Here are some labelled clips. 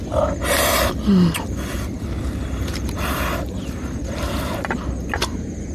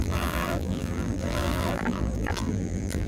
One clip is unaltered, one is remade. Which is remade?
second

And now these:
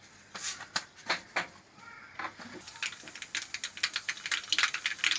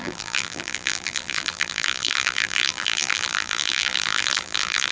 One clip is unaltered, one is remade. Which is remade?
second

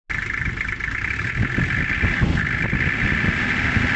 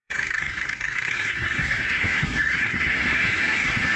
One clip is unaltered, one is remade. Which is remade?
second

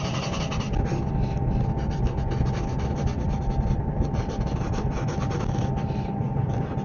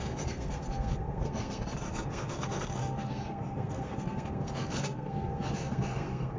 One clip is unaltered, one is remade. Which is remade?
second